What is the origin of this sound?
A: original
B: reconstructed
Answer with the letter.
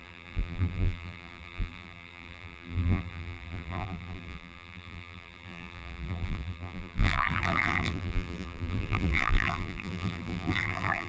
B